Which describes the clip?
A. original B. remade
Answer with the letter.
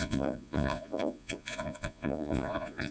B